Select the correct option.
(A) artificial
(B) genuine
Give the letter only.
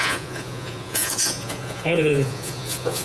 A